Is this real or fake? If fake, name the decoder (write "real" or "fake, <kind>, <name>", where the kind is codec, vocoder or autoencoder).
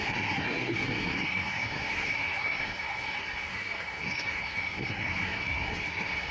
fake, codec, SNAC